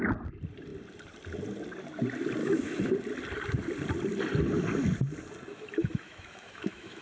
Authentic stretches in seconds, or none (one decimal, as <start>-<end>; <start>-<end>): 0.0-2.4; 2.9-5.5